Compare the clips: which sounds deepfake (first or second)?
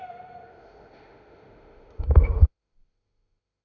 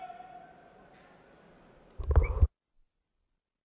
first